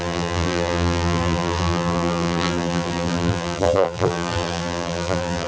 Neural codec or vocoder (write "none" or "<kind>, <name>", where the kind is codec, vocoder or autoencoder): vocoder, BigVGAN v2